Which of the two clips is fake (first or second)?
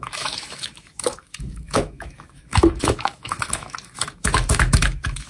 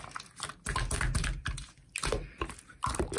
first